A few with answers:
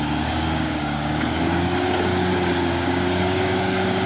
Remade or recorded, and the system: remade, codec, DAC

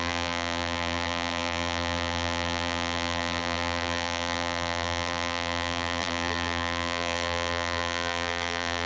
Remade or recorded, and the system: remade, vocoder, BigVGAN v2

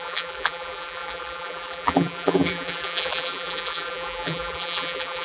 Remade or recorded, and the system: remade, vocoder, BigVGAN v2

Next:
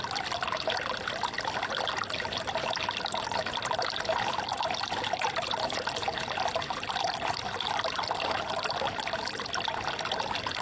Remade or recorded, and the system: recorded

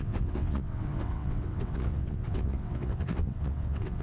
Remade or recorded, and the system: remade, vocoder, WaveNeXt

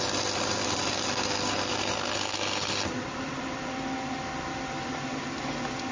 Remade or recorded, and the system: recorded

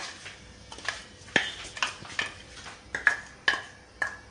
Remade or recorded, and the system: recorded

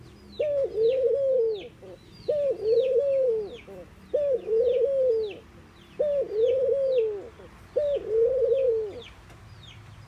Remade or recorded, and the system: recorded